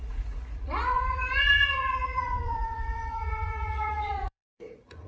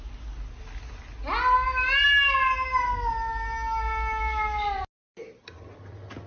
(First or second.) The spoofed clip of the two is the first